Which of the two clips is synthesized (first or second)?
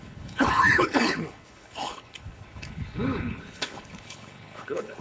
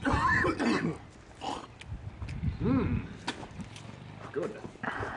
first